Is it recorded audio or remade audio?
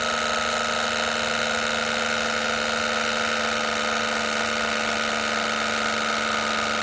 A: recorded